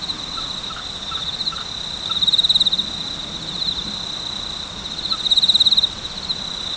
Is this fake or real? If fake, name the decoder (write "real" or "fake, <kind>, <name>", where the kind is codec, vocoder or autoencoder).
real